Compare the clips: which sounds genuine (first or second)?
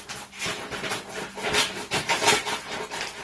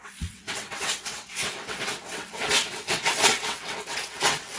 first